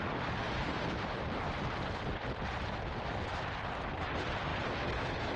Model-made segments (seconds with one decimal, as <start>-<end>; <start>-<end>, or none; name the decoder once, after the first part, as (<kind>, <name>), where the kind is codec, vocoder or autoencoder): none